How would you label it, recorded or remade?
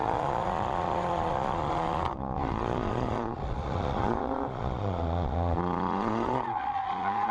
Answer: remade